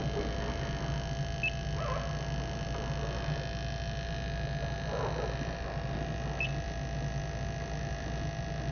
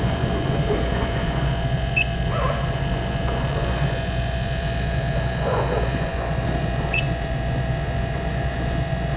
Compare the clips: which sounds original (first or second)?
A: first